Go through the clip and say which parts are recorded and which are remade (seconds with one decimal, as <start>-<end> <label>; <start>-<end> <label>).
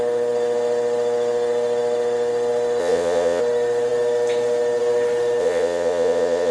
0.0-2.8 recorded; 2.8-3.4 remade; 3.4-5.4 recorded; 5.4-6.5 remade